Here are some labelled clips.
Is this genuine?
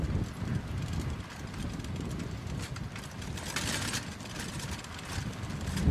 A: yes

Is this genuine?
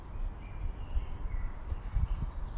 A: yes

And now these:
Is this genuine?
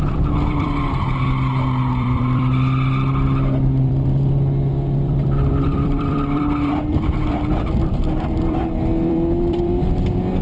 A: no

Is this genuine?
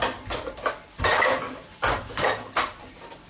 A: yes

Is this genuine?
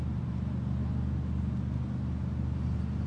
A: yes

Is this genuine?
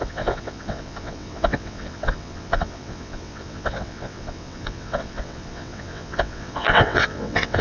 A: no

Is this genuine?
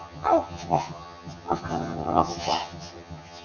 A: no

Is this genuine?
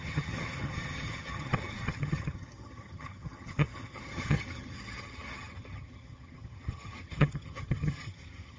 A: no